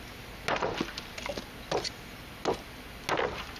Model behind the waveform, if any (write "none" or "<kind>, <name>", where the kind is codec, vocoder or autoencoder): none